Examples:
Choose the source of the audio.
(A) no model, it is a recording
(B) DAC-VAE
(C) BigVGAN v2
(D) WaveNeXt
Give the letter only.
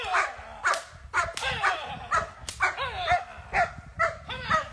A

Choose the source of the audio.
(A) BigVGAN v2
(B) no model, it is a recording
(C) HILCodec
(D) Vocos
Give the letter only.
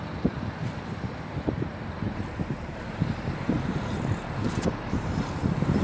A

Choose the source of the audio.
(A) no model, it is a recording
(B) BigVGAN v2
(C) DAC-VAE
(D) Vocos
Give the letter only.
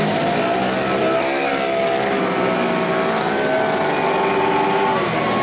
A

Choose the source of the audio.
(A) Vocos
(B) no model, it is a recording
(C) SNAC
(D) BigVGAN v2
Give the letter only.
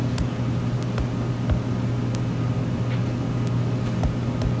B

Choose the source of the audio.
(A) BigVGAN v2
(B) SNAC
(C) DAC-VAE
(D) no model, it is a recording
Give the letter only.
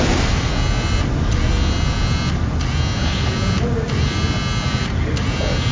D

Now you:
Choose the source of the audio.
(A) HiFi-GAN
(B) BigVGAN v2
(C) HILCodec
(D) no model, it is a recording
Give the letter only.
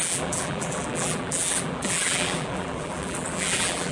B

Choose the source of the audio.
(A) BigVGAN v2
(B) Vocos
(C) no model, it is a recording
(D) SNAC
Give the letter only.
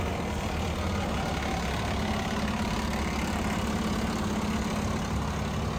C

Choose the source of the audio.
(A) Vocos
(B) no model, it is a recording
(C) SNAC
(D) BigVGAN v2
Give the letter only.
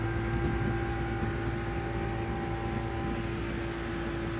B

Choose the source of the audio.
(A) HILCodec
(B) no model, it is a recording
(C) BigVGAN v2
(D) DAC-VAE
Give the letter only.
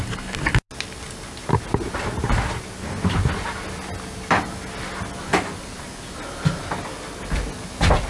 B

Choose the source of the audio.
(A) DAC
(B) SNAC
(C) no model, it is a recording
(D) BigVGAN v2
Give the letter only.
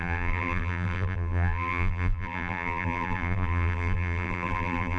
D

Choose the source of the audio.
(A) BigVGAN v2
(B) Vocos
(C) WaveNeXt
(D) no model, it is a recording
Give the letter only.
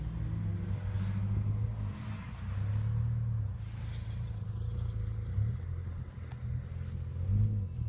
D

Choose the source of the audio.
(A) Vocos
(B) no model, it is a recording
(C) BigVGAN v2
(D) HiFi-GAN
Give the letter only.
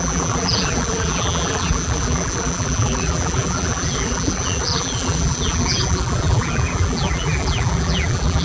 C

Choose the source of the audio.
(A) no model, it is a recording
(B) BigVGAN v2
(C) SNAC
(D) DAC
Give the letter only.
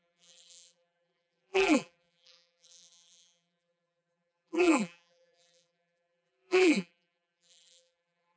B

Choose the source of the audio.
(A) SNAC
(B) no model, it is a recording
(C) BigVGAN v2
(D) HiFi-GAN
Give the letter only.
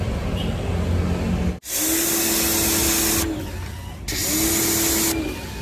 B